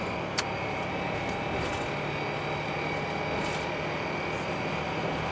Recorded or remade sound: recorded